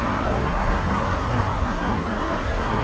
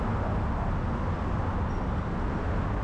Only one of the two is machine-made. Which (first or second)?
first